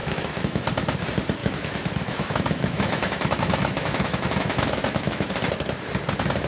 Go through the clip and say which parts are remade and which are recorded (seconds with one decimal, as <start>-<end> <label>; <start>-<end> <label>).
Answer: 0.0-0.6 remade; 0.6-1.4 recorded; 1.4-5.3 remade; 5.3-6.5 recorded